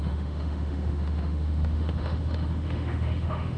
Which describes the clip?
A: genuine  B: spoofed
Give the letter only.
B